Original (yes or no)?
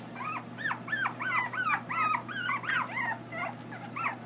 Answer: yes